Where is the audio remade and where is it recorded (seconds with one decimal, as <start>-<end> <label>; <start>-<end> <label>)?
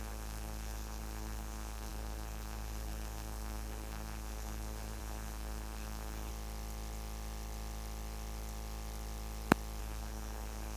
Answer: 0.0-6.3 remade; 6.3-9.8 recorded; 9.8-10.8 remade